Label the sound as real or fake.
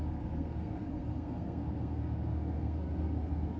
fake